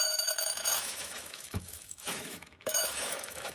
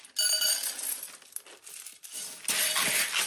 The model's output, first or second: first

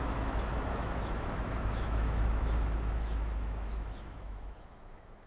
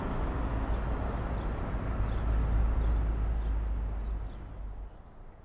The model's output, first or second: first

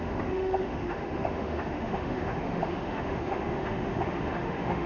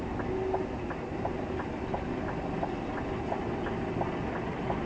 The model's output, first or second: first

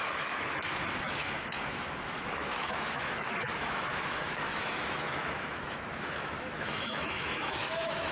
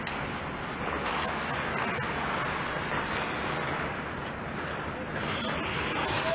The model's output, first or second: first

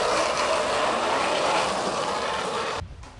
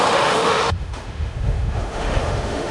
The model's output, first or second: second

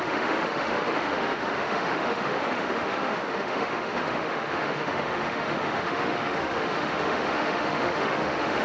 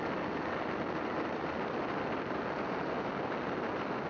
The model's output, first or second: first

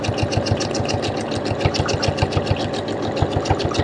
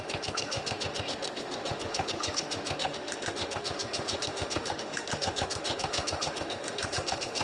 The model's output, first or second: second